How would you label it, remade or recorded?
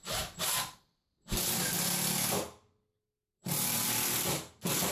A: recorded